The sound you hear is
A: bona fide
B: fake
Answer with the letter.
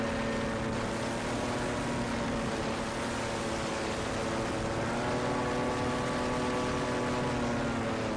A